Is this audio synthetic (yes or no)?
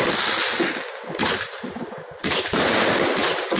no